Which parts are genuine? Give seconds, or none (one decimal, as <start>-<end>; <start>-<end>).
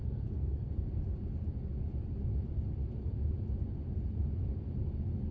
0.7-5.3